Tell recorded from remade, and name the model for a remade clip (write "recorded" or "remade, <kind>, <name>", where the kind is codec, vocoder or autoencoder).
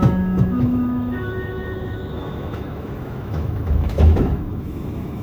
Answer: remade, autoencoder, DAC-VAE